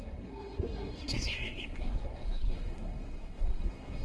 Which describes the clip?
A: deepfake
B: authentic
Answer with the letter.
A